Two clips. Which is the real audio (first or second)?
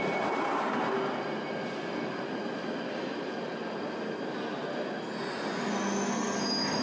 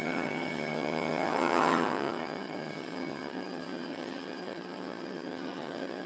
first